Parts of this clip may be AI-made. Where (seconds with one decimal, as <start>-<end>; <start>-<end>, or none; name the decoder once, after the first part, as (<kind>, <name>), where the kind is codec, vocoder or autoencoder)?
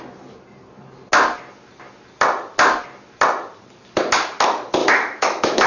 4.8-5.7 (autoencoder, DAC-VAE)